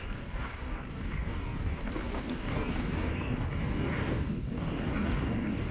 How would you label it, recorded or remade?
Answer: remade